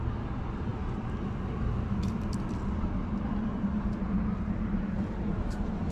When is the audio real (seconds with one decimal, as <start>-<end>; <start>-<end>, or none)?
none

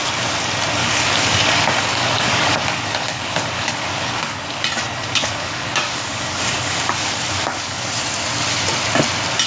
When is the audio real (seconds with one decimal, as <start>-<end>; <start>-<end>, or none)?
0.0-0.8; 4.4-5.0; 7.9-9.5

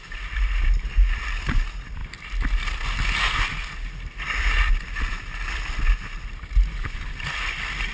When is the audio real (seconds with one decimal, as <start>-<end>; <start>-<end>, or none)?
0.0-7.9

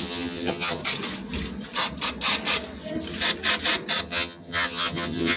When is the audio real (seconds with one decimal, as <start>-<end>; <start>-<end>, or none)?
0.8-4.0

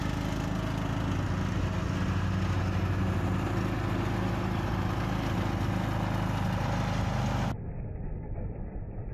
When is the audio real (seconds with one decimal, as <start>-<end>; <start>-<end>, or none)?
0.0-9.1

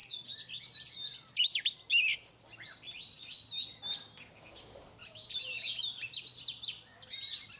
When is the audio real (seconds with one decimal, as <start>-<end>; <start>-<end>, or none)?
0.0-5.0; 5.8-7.6

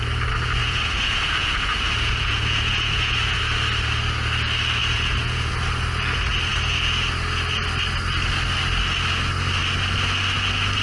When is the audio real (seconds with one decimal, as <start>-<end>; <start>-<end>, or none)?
0.0-0.6; 3.4-4.8; 5.5-10.8

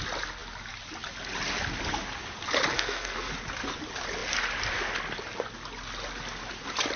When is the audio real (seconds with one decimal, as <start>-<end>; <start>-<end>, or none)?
0.0-2.7; 3.3-7.0